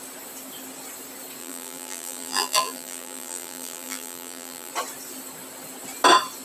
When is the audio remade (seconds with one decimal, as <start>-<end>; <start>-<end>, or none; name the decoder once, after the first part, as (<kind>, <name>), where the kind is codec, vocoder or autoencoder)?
1.4-4.7 (vocoder, BigVGAN v2)